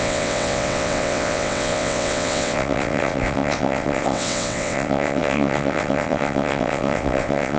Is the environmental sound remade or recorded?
remade